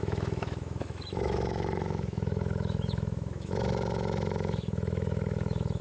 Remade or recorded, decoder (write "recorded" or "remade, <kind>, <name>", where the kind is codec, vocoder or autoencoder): remade, autoencoder, DAC-VAE